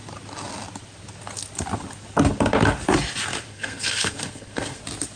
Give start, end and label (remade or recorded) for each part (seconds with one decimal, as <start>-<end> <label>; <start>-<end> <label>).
0.0-3.5 recorded; 3.5-4.8 remade; 4.8-5.2 recorded